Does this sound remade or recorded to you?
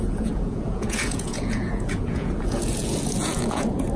remade